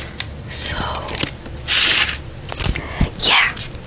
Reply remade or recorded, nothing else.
recorded